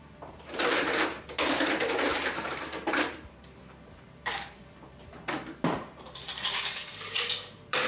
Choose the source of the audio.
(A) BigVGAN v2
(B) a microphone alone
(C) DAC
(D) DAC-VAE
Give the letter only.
A